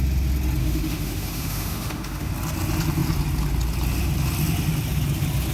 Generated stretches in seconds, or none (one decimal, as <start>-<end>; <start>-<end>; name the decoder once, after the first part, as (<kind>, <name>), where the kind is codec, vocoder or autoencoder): 0.6-2.3 (autoencoder, DAC-VAE)